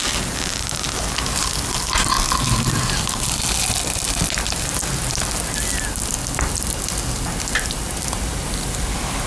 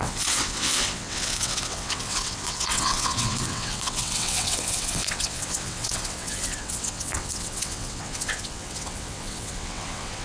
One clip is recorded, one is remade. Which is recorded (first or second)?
first